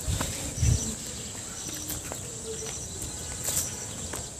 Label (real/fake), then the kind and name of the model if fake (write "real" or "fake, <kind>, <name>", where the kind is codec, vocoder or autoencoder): real